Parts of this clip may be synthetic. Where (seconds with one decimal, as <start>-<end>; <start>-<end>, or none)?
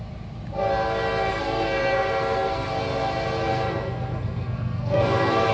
1.3-2.7; 3.5-5.5